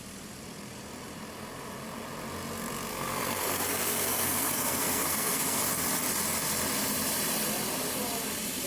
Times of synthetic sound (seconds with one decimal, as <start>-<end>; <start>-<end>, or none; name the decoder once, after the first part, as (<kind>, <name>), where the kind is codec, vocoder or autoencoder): 2.9-5.7 (codec, SNAC)